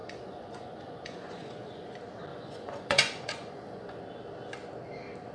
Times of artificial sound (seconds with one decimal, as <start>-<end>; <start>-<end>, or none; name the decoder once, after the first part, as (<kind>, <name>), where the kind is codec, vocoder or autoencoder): 0.0-1.9 (vocoder, Vocos); 2.3-4.0